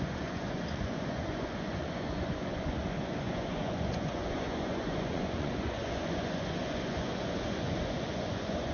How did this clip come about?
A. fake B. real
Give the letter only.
A